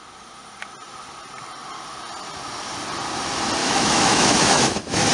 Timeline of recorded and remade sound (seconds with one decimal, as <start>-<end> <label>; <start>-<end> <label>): 0.0-3.6 recorded; 3.6-5.1 remade